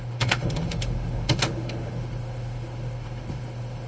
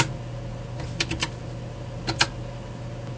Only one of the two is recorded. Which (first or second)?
second